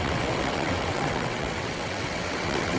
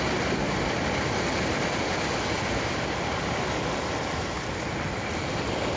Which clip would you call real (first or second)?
second